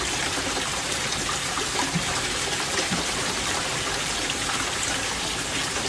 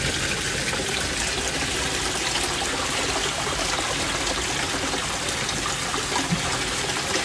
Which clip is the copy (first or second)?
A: first